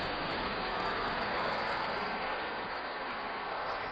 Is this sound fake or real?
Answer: fake